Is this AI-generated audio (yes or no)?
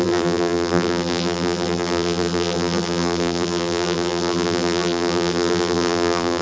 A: yes